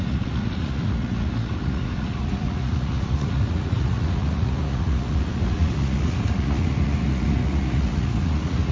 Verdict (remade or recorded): remade